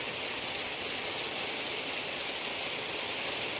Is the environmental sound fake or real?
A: real